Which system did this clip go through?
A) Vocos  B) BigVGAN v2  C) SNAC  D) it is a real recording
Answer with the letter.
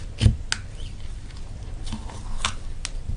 D